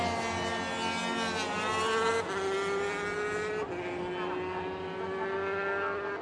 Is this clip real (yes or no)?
yes